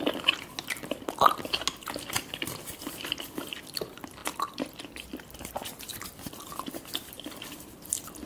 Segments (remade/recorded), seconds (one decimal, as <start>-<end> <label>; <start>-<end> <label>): 0.0-4.2 recorded; 4.2-4.7 remade; 4.7-8.3 recorded